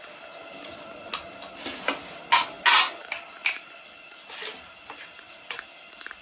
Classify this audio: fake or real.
real